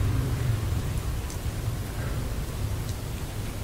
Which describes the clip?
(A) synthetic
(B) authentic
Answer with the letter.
A